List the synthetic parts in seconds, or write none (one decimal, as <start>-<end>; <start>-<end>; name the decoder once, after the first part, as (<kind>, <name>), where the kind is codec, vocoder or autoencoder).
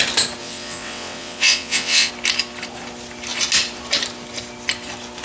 0.4-2.1 (vocoder, WaveNeXt)